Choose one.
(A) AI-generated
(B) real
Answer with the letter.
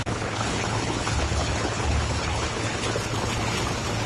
A